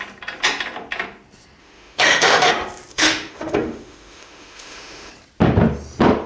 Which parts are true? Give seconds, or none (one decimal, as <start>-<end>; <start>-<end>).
0.0-1.6; 2.5-2.9; 5.1-6.3